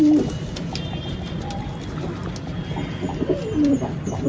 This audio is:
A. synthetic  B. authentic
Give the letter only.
B